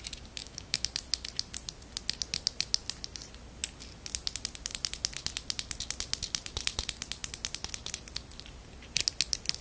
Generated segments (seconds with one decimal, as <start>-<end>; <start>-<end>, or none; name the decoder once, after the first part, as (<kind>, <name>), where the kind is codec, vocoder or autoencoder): 0.4-0.9 (autoencoder, DAC-VAE)